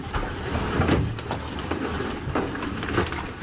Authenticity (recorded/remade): remade